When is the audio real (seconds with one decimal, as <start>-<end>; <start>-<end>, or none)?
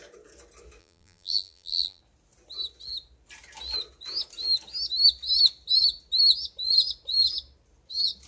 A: 0.0-0.8; 2.0-8.3